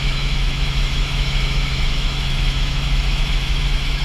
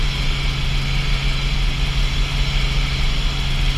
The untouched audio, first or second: second